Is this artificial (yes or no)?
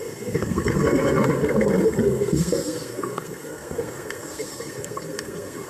yes